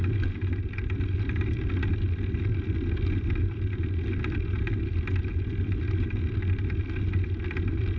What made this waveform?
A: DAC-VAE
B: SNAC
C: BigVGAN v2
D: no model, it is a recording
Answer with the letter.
D